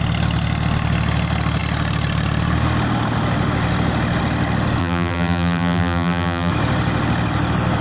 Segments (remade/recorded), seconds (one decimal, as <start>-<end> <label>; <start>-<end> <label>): 0.0-4.8 recorded; 4.8-6.5 remade; 6.5-7.8 recorded